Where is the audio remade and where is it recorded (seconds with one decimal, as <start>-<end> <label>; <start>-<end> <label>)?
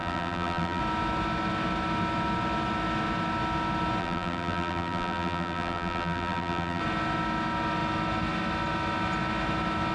0.0-0.8 remade; 0.8-4.0 recorded; 4.0-6.8 remade; 6.8-9.9 recorded